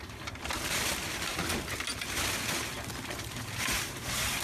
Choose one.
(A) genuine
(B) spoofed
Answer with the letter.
B